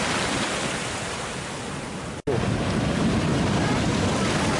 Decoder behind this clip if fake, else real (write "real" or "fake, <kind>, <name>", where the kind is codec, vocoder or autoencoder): real